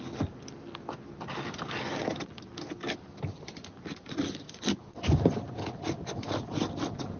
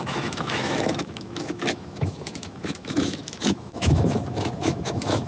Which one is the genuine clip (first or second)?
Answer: first